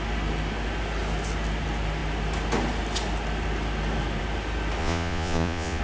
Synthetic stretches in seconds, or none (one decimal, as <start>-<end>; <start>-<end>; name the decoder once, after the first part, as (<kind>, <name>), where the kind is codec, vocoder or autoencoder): 4.8-5.8 (vocoder, Vocos)